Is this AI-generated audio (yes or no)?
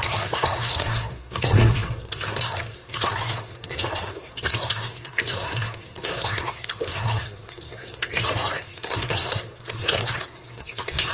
yes